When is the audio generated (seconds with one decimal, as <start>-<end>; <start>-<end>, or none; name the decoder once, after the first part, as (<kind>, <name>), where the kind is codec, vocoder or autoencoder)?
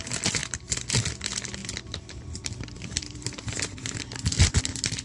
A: 0.4-1.1 (vocoder, BigVGAN v2); 1.6-4.6